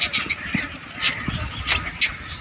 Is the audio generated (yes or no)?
no